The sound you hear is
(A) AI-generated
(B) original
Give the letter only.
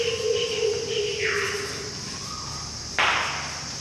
B